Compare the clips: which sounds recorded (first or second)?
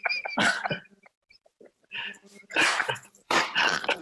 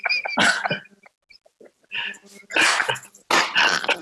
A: second